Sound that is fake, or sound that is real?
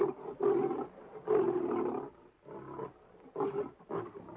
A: fake